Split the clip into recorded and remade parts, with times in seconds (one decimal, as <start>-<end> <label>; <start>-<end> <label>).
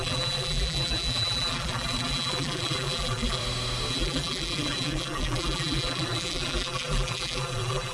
0.0-3.4 remade; 3.4-3.9 recorded; 3.9-7.9 remade